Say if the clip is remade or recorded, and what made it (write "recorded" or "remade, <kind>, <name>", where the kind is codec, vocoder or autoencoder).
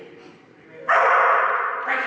recorded